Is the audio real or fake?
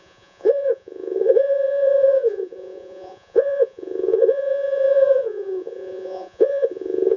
fake